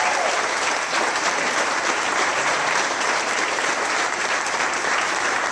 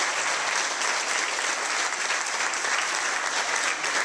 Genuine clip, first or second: second